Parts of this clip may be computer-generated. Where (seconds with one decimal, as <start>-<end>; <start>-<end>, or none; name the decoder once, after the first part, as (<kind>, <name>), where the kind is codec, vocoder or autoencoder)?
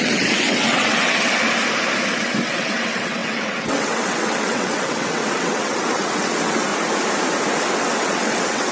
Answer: 0.0-1.3 (vocoder, WaveNeXt); 2.1-6.7; 7.7-8.7